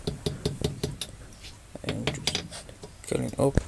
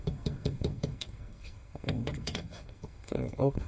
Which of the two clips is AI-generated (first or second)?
second